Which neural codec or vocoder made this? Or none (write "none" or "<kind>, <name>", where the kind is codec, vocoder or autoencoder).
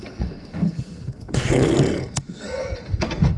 codec, SNAC